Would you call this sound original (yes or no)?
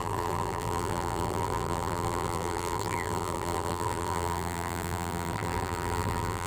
no